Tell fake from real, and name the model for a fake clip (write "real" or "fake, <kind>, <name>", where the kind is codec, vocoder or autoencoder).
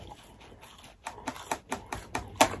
real